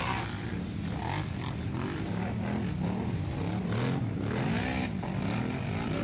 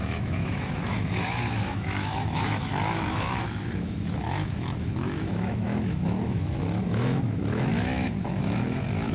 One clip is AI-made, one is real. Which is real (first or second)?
first